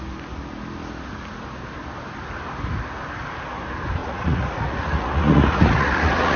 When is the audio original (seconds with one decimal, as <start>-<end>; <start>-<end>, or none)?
0.0-4.0